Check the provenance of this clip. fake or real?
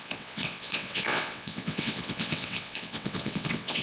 fake